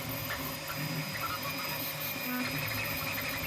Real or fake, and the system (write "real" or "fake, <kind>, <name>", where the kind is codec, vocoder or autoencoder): real